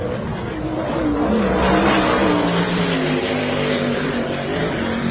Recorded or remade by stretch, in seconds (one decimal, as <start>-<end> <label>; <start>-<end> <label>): 0.0-3.4 recorded; 3.4-4.1 remade; 4.1-5.1 recorded